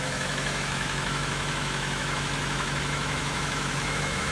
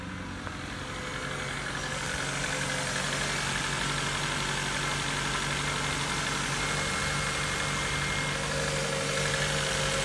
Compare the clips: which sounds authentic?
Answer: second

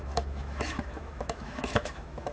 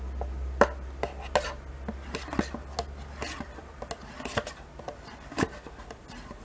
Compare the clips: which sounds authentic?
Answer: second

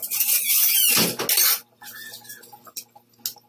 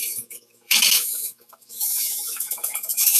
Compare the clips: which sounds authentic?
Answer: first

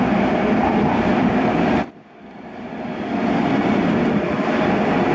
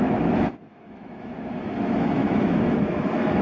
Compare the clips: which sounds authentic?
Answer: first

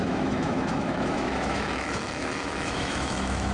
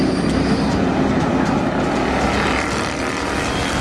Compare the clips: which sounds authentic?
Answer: second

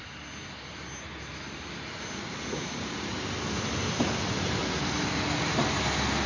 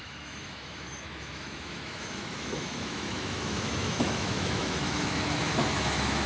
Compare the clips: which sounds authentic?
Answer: first